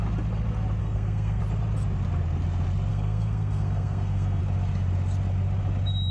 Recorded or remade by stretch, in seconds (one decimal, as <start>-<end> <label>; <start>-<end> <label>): 0.0-0.8 recorded; 0.8-1.4 remade; 1.4-2.9 recorded; 2.9-4.4 remade; 4.4-6.1 recorded